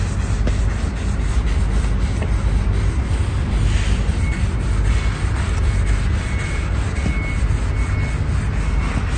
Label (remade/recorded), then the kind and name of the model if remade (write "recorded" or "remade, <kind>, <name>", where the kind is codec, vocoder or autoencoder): recorded